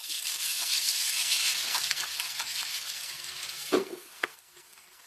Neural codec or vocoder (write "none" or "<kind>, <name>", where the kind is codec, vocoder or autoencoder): codec, SNAC